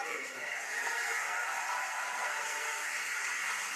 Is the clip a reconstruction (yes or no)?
yes